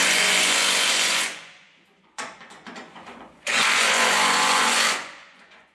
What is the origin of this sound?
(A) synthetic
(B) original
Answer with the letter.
A